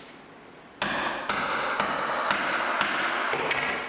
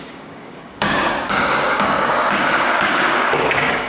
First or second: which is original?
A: first